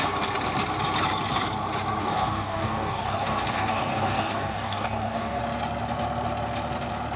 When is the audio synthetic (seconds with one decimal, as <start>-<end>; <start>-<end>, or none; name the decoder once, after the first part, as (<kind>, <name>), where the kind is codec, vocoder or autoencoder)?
2.0-5.4 (codec, DAC)